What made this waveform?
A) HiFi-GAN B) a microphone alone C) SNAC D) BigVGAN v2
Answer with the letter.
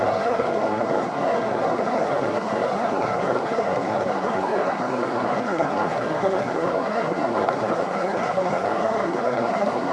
C